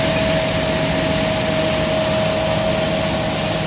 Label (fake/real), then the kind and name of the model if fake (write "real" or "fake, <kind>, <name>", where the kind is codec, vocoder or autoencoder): real